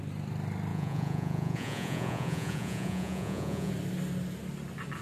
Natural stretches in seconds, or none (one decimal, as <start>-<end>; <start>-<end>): 0.0-0.7; 3.7-5.0